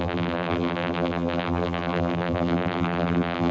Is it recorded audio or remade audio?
remade